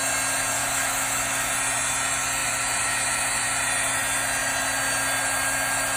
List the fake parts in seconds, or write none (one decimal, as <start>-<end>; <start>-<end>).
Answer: 0.6-1.5